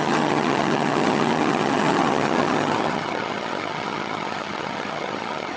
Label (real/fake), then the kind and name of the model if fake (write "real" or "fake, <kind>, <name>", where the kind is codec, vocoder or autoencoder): fake, vocoder, HiFi-GAN